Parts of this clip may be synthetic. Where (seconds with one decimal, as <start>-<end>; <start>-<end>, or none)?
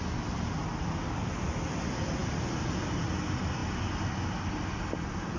none